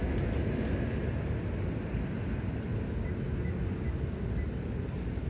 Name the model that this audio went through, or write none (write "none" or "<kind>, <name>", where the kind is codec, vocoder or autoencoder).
none